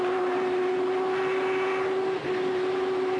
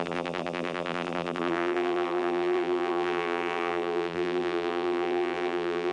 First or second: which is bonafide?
first